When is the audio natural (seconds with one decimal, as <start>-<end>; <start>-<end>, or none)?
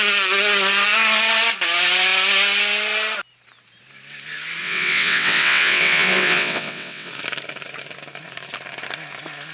0.0-4.6; 7.1-9.5